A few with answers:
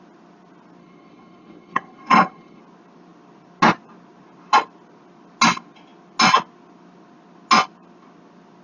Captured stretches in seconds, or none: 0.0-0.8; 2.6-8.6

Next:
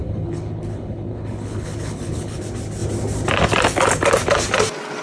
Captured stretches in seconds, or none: 2.4-5.0

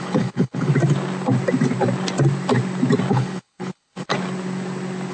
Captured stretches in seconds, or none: 0.7-3.1; 4.1-5.1

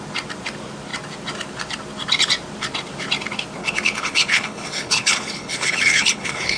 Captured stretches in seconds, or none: 0.0-3.6

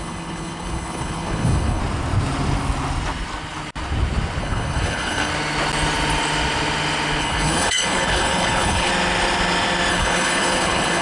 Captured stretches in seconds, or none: 1.8-4.4; 5.3-7.2; 8.9-9.9